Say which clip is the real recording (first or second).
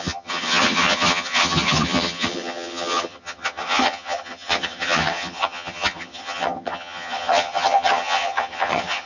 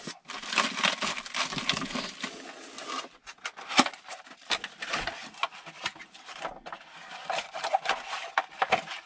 second